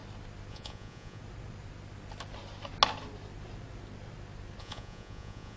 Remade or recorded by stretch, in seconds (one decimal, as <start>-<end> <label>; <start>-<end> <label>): 0.0-0.5 recorded; 0.5-1.2 remade; 1.2-4.6 recorded; 4.6-5.6 remade